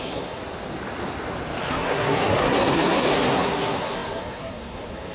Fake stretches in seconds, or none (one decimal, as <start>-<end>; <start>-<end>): 0.0-0.4; 1.7-5.1